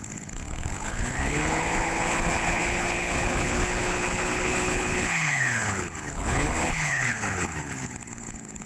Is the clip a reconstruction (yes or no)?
yes